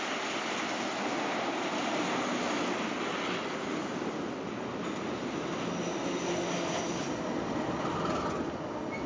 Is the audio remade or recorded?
recorded